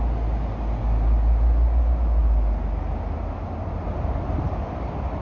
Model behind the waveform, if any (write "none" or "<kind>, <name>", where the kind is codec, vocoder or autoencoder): none